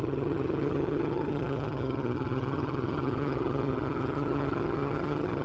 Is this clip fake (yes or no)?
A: yes